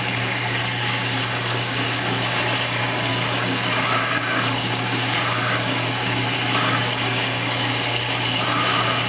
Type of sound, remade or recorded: remade